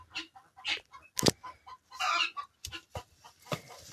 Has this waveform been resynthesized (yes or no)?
no